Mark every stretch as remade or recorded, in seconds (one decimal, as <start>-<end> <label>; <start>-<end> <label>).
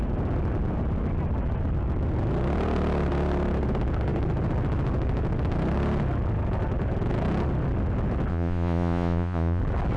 0.0-8.3 recorded; 8.3-9.6 remade; 9.6-10.0 recorded